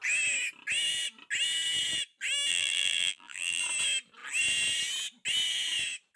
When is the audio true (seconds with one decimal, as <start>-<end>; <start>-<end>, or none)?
0.0-2.5; 3.6-6.2